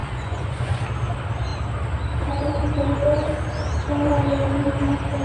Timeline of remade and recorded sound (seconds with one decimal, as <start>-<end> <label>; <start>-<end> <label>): 0.0-0.8 remade; 0.8-5.2 recorded

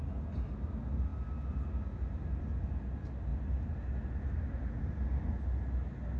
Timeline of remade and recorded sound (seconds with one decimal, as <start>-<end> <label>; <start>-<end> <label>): 0.0-6.2 recorded

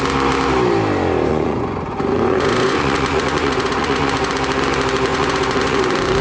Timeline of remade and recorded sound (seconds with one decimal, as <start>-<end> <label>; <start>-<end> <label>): 0.0-1.3 recorded; 1.3-4.3 remade; 4.3-5.1 recorded; 5.1-5.8 remade; 5.8-6.2 recorded

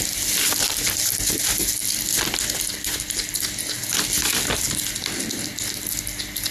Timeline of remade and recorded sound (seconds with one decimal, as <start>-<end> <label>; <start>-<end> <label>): 0.0-6.5 recorded

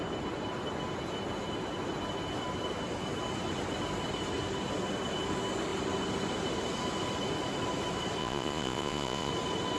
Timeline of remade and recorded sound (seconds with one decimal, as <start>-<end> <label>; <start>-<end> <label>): 0.0-8.2 recorded; 8.2-9.3 remade; 9.3-9.8 recorded

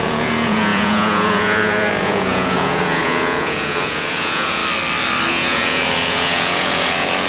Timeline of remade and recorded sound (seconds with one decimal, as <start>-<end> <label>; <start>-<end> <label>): 0.0-4.6 remade; 4.6-5.3 recorded; 5.3-7.3 remade